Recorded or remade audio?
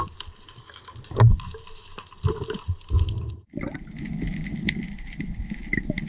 recorded